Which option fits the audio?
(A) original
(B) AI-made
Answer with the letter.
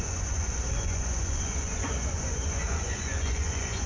B